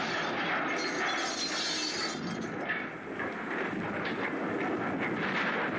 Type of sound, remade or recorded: recorded